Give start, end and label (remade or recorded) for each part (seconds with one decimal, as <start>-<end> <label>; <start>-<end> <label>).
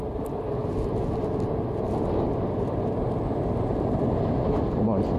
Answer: 0.0-5.2 recorded